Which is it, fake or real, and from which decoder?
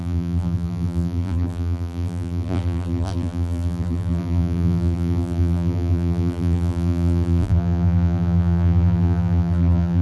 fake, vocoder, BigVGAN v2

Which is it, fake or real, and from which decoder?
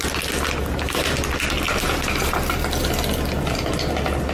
real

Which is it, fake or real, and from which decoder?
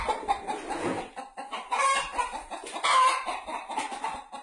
fake, vocoder, BigVGAN v2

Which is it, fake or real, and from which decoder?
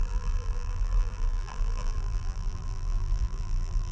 fake, vocoder, BigVGAN v2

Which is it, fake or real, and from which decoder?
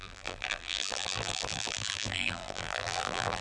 fake, vocoder, BigVGAN v2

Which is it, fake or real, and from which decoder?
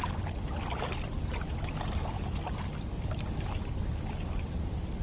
real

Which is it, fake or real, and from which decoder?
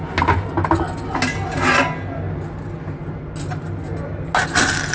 real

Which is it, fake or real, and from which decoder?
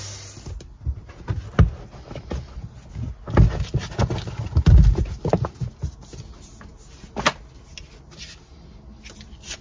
real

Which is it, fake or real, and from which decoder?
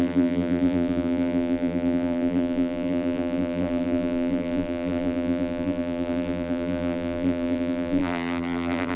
fake, vocoder, BigVGAN v2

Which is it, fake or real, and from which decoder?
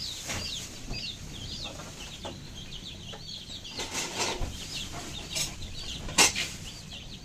fake, vocoder, BigVGAN v2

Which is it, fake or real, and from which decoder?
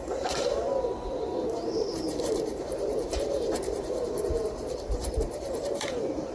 fake, vocoder, BigVGAN v2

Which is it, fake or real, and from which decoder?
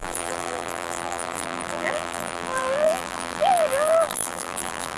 fake, vocoder, BigVGAN v2